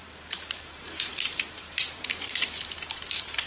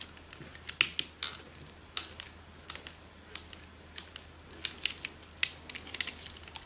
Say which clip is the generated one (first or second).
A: first